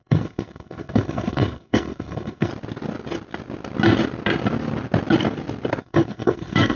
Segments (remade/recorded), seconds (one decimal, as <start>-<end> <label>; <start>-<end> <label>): 0.0-2.5 remade; 2.5-5.8 recorded; 5.8-6.8 remade

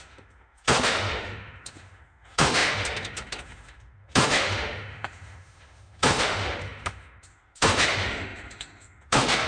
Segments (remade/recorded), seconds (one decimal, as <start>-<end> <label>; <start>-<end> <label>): 0.0-9.5 remade

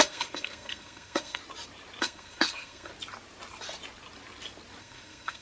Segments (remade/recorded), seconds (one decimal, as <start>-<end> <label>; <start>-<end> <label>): 0.0-1.4 remade; 1.4-2.0 recorded; 2.0-2.9 remade; 2.9-4.8 recorded; 4.8-5.4 remade

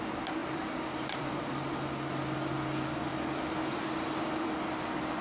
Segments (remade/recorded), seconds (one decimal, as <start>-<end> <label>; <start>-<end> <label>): 0.0-0.4 recorded; 0.4-1.5 remade; 1.5-3.1 recorded; 3.1-4.1 remade; 4.1-5.2 recorded

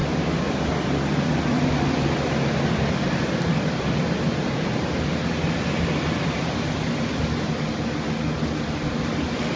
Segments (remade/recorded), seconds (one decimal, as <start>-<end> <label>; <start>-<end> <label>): 0.0-9.6 recorded

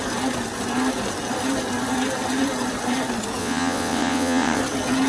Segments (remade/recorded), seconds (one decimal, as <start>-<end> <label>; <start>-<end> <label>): 0.0-3.4 recorded; 3.4-4.6 remade; 4.6-5.1 recorded